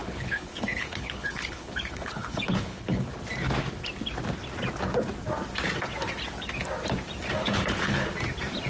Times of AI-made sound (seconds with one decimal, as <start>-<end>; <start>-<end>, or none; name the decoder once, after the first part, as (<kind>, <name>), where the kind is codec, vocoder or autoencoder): 0.0-3.1 (codec, HILCodec); 7.4-8.1